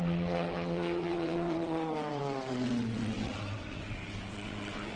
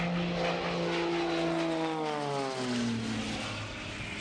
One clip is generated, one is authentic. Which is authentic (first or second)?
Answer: second